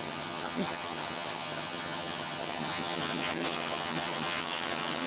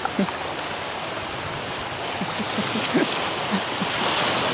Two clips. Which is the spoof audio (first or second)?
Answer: first